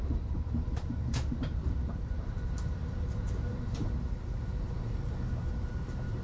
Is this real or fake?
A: fake